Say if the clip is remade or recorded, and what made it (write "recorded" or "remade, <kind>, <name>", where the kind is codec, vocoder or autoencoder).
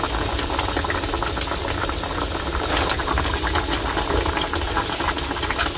recorded